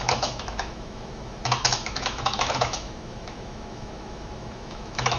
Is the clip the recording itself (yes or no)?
no